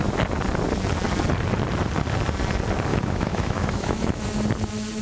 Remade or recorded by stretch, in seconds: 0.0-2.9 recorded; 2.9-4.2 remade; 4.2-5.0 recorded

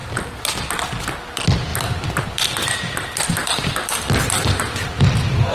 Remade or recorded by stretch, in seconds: 0.0-5.5 recorded

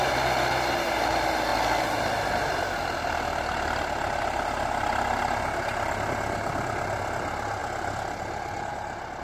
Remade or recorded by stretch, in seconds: 0.0-9.2 recorded

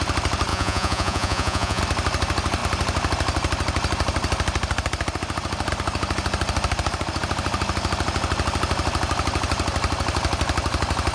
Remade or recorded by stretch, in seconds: 0.0-0.5 recorded; 0.5-1.8 remade; 1.8-11.1 recorded

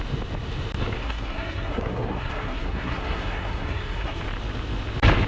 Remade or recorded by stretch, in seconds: 0.0-1.0 recorded; 1.0-4.2 remade; 4.2-5.3 recorded

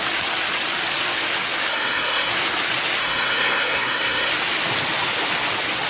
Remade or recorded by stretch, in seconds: 0.0-1.7 recorded; 1.7-2.3 remade; 2.3-3.0 recorded; 3.0-4.3 remade; 4.3-5.9 recorded

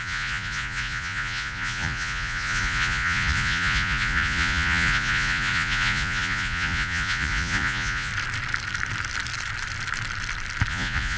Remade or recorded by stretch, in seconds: 0.0-8.1 remade; 8.1-10.7 recorded; 10.7-11.2 remade